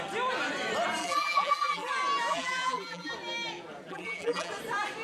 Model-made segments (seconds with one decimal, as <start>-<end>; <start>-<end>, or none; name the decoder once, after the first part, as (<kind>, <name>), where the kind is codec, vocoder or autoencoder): 1.0-1.9 (vocoder, BigVGAN v2); 2.3-3.1; 3.9-4.5